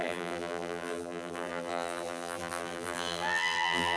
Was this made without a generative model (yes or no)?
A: no